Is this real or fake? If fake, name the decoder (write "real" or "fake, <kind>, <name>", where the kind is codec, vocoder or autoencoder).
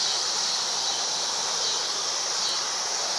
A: real